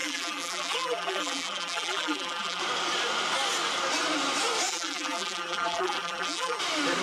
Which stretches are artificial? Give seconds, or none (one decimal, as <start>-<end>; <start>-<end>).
0.0-2.6; 4.7-6.6